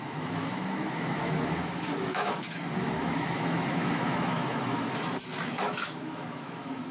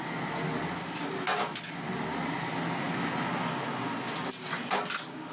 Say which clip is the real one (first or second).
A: second